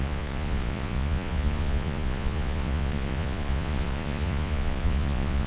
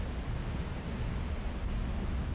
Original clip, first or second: second